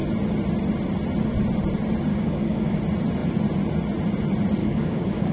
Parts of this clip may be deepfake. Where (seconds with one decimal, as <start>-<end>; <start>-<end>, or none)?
2.1-2.8; 4.6-5.3